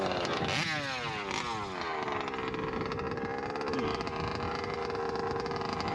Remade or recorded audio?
recorded